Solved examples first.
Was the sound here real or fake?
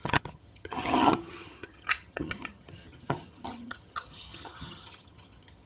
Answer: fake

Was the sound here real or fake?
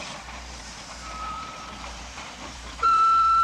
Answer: fake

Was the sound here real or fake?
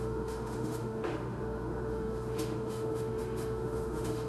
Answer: fake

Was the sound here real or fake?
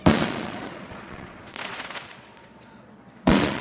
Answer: fake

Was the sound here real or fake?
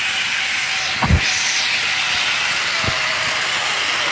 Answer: real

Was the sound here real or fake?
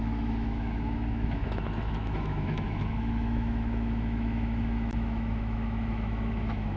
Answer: fake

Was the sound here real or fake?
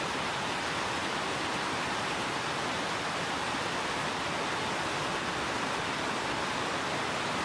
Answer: real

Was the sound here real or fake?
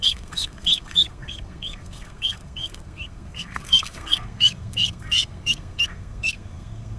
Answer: fake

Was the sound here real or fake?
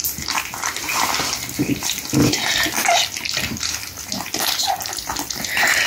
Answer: real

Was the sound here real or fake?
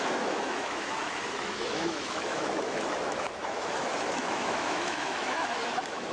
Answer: fake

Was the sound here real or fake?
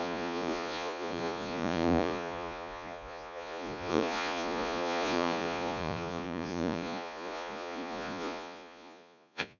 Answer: fake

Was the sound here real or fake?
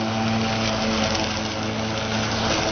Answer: real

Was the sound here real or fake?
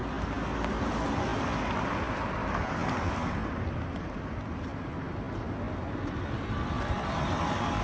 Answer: real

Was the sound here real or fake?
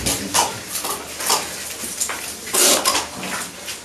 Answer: real